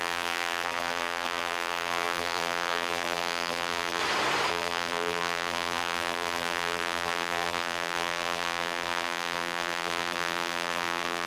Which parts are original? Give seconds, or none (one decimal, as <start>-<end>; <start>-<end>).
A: 4.0-4.5